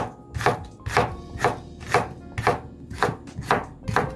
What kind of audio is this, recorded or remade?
recorded